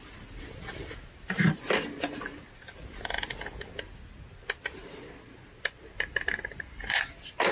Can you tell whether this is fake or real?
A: real